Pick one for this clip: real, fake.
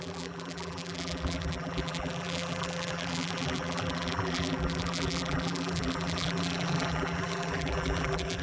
fake